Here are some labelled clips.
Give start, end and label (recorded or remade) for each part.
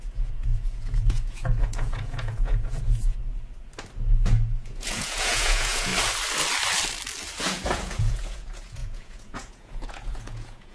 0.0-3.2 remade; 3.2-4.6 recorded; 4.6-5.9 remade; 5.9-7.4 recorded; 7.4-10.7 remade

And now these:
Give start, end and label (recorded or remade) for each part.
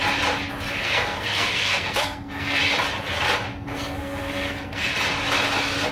0.0-0.8 recorded; 0.8-2.6 remade; 2.6-3.5 recorded; 3.5-4.9 remade; 4.9-5.9 recorded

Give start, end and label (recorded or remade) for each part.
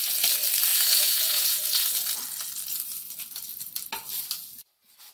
0.0-0.7 recorded; 0.7-2.2 remade; 2.2-5.1 recorded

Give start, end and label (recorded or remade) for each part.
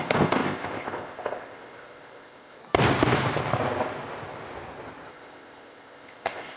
0.0-2.6 remade; 2.6-5.1 recorded; 5.1-6.6 remade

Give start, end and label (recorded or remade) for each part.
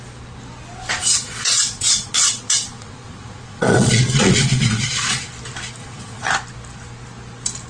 0.0-1.0 recorded; 1.0-5.2 remade; 5.2-5.8 recorded; 5.8-6.3 remade; 6.3-7.7 recorded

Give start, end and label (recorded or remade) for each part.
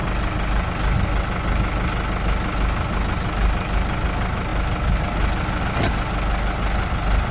0.0-7.3 recorded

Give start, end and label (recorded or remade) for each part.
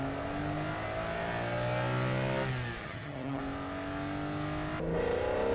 0.0-2.8 recorded; 2.8-3.4 remade; 3.4-5.5 recorded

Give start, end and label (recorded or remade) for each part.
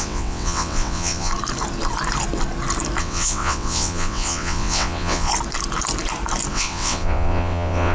0.0-1.3 remade; 1.3-3.0 recorded; 3.0-5.3 remade; 5.3-6.5 recorded; 6.5-7.9 remade